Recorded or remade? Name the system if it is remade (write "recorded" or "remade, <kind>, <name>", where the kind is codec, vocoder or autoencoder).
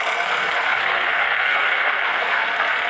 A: remade, codec, SNAC